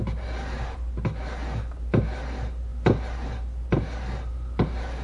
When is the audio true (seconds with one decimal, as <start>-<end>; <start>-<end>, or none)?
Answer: 0.0-5.0